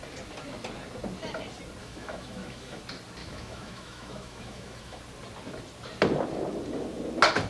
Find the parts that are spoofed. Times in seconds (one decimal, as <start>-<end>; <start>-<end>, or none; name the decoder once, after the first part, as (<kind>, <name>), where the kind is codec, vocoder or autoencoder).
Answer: 1.8-2.8 (autoencoder, DAC-VAE); 3.2-5.0

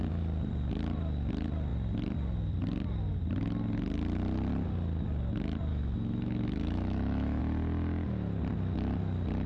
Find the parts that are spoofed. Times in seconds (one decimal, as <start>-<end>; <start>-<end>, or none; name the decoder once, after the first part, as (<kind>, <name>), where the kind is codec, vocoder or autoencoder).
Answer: 5.7-7.4 (autoencoder, DAC-VAE)

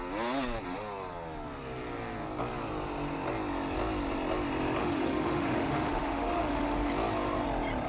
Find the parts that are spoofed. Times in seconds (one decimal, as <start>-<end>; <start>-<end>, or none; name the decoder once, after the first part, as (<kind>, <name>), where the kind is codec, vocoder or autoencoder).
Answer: 4.8-6.9 (autoencoder, DAC-VAE)

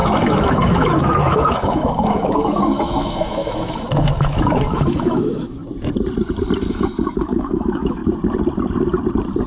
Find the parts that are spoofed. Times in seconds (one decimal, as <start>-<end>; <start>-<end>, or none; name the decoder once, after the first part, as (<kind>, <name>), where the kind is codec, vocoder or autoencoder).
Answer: 0.0-5.6 (autoencoder, DAC-VAE); 6.7-8.0

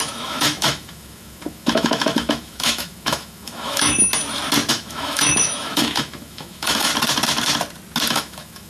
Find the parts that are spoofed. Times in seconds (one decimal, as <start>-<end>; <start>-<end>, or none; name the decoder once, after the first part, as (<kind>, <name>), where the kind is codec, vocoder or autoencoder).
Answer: 0.0-4.0 (autoencoder, DAC-VAE); 4.7-6.9; 8.1-8.7